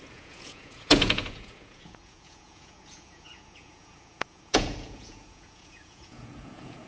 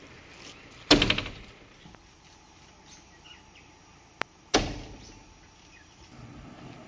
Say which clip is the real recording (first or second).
second